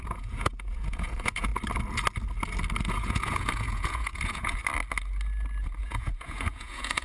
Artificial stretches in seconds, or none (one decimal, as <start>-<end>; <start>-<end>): 0.0-1.5; 2.9-4.6; 5.8-7.0